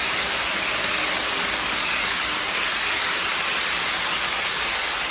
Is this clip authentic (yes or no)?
yes